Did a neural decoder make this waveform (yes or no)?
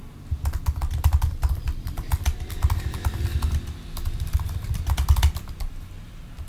yes